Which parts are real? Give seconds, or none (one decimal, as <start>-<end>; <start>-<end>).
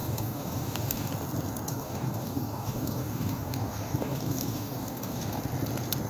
1.1-1.7; 5.4-6.1